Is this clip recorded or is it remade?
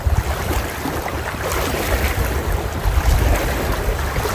recorded